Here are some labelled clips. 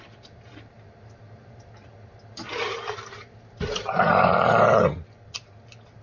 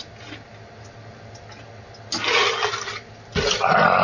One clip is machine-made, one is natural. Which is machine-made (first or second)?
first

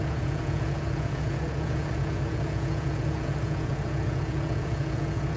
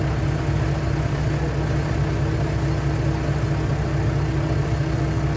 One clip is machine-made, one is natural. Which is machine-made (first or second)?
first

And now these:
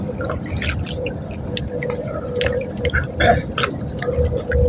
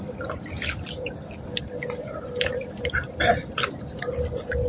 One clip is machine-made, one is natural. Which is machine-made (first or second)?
second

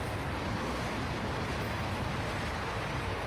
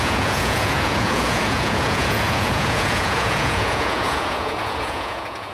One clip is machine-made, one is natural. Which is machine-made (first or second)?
second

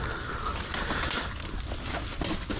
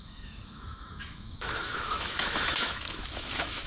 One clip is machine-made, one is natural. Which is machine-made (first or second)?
second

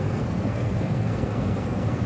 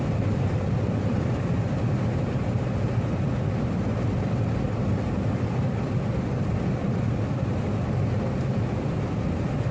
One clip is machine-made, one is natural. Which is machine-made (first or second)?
first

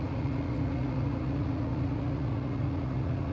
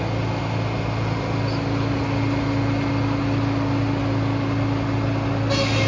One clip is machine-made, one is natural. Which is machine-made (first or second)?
first